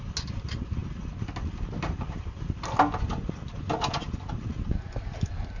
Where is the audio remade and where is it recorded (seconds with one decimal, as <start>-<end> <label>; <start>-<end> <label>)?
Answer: 0.0-5.6 recorded